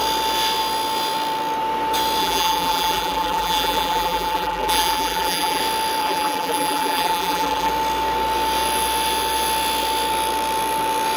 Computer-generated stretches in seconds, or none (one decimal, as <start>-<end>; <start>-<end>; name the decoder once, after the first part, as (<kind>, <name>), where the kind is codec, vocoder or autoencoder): 2.2-5.6 (vocoder, BigVGAN v2); 6.0-7.7